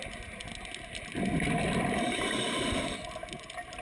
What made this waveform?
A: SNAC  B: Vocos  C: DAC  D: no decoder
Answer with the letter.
D